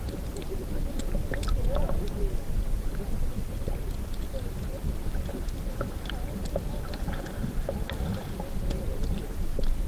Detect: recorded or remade recorded